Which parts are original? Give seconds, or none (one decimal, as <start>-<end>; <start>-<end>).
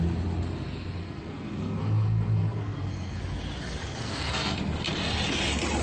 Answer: 0.0-1.0; 3.2-3.8; 4.6-5.8